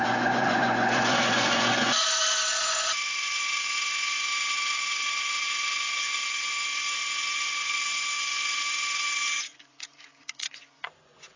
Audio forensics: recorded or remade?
remade